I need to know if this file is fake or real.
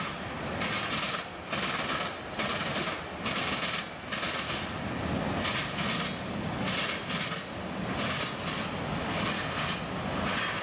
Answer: real